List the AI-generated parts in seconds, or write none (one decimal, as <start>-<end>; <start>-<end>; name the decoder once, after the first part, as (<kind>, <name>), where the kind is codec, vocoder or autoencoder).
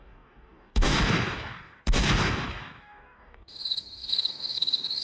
0.0-5.0 (codec, DAC)